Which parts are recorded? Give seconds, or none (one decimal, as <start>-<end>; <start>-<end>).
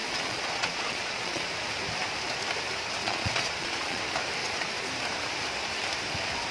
1.5-3.0; 4.0-4.4; 4.9-6.5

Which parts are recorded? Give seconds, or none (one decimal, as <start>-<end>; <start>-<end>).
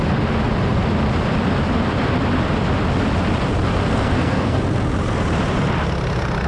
0.0-3.9; 4.6-6.5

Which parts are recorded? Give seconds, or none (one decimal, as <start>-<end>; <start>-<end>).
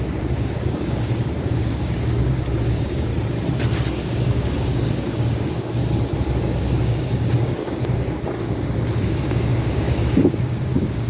3.1-4.0; 5.8-6.4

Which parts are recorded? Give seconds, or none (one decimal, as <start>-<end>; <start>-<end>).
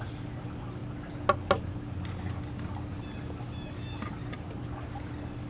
0.0-5.5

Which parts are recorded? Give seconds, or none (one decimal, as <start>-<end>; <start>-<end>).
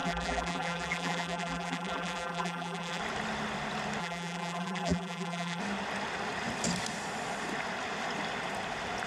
3.0-4.0; 5.6-9.1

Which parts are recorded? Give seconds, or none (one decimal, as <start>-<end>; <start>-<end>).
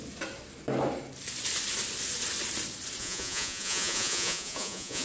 0.0-3.0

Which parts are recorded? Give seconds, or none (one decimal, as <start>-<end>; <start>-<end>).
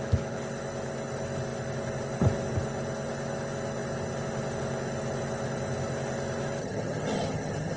0.0-6.6